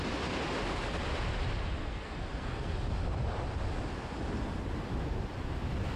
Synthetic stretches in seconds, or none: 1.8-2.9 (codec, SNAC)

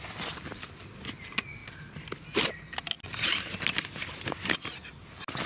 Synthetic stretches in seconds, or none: none

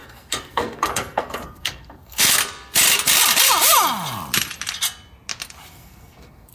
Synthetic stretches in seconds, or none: 0.0-2.4 (codec, SNAC); 5.7-6.5

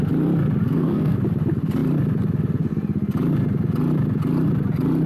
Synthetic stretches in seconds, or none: 0.6-1.2 (codec, SNAC)

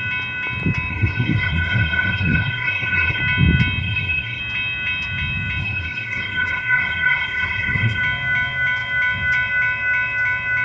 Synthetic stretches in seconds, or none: 0.9-3.2 (codec, SNAC); 3.8-4.4; 5.6-8.0

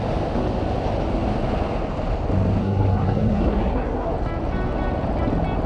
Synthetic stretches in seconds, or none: 2.6-4.1 (codec, SNAC)

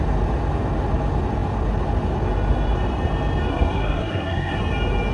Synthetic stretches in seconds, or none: 3.5-4.6 (codec, SNAC)